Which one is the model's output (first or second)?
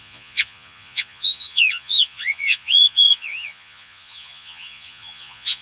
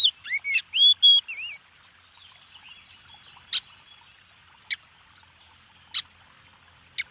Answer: first